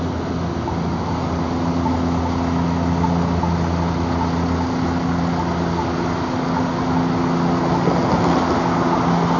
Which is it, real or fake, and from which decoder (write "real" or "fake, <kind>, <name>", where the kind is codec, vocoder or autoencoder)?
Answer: real